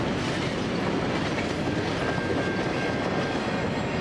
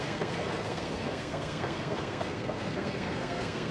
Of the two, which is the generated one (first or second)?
second